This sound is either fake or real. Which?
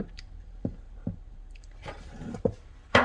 fake